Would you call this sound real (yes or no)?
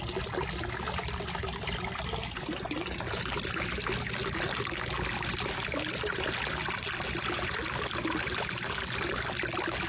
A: yes